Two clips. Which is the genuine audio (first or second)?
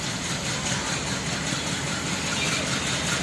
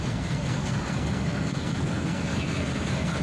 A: first